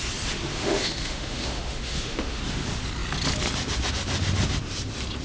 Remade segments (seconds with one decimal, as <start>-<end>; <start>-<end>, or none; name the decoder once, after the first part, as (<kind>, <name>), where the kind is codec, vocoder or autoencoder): 0.5-2.4 (autoencoder, DAC-VAE)